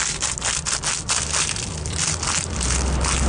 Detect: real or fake real